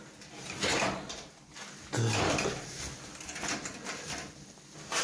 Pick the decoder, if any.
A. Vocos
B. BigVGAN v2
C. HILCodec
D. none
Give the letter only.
B